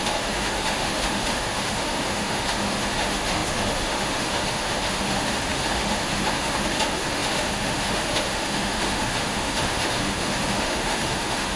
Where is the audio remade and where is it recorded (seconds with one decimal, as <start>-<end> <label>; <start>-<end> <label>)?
0.0-11.6 remade